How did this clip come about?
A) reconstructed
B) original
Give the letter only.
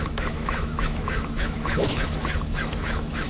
A